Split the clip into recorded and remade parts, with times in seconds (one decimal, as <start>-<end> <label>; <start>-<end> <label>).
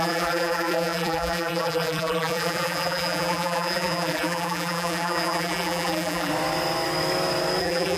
0.0-6.3 remade; 6.3-7.6 recorded; 7.6-8.0 remade